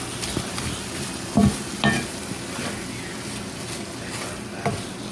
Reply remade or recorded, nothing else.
recorded